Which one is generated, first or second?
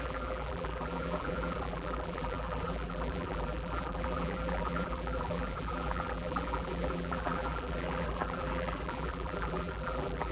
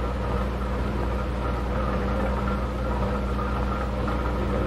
first